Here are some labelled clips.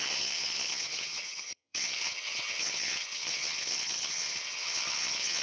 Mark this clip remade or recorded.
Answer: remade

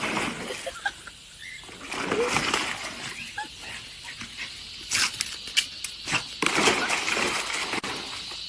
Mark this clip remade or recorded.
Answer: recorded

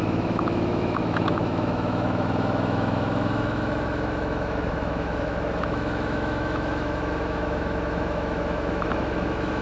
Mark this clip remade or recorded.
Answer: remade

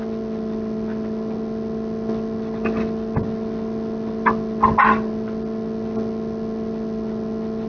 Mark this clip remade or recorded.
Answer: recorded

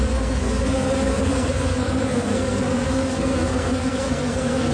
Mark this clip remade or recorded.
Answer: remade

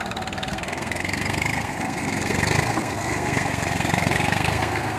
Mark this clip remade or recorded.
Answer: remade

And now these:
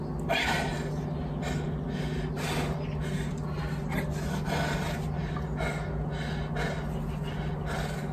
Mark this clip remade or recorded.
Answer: recorded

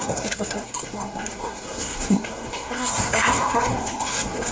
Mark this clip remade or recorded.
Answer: remade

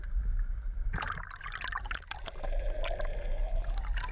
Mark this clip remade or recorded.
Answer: recorded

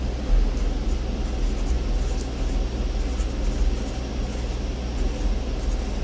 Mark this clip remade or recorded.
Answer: recorded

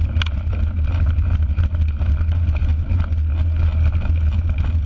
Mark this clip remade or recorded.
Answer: recorded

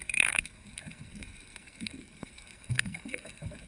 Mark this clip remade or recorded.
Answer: remade